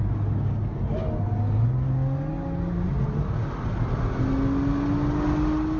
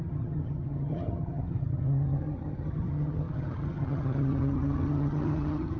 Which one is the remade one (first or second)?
second